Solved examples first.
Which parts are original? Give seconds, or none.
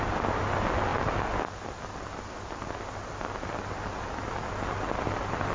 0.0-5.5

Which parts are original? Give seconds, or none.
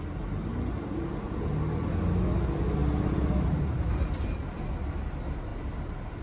0.0-0.5; 1.4-6.2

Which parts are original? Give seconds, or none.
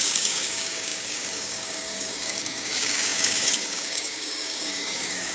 none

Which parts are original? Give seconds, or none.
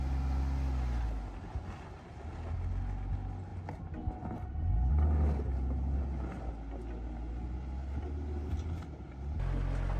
0.0-10.0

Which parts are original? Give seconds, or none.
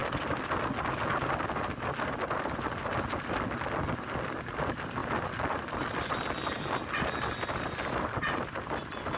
0.0-9.2